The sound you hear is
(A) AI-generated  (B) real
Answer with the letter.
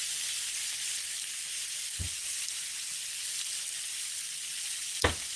B